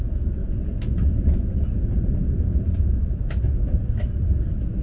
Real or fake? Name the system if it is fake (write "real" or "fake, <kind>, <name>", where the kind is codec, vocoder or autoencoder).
real